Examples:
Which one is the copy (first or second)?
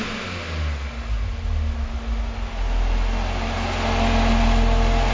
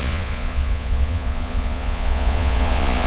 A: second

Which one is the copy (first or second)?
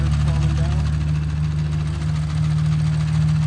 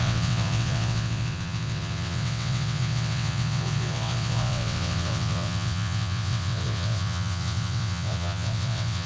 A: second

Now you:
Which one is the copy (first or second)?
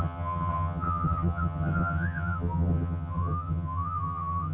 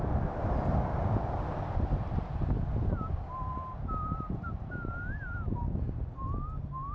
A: first